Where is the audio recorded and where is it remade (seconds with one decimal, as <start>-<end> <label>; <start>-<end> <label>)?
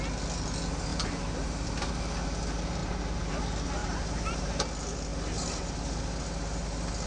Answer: 0.0-0.9 recorded; 0.9-1.9 remade; 1.9-2.8 recorded; 2.8-3.3 remade; 3.3-3.8 recorded; 3.8-4.5 remade; 4.5-5.1 recorded; 5.1-6.0 remade; 6.0-7.1 recorded